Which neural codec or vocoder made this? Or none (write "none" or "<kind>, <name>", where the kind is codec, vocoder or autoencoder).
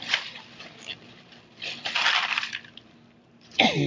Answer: vocoder, BigVGAN v2